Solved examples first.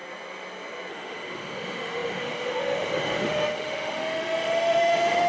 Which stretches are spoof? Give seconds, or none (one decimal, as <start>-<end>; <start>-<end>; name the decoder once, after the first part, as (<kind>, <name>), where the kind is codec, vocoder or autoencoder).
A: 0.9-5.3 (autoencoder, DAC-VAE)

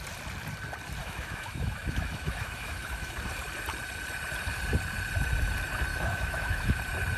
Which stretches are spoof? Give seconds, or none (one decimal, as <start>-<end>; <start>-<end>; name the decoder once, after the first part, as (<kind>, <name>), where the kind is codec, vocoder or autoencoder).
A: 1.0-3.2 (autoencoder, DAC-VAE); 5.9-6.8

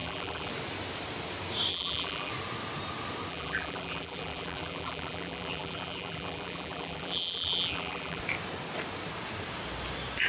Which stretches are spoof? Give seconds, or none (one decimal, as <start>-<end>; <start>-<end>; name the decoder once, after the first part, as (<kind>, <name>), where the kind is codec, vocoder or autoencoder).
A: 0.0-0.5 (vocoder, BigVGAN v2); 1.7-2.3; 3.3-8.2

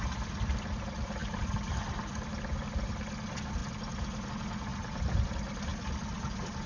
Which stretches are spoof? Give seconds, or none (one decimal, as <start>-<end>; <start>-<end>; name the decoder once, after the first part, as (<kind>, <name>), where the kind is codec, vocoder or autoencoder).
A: 4.7-5.3 (vocoder, BigVGAN v2); 5.7-6.7

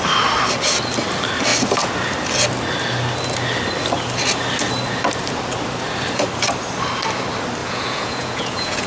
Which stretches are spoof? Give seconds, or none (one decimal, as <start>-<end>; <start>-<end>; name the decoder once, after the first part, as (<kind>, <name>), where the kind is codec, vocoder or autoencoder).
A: 7.6-8.9 (vocoder, Vocos)